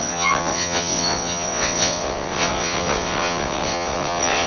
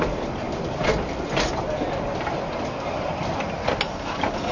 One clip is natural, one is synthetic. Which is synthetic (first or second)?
first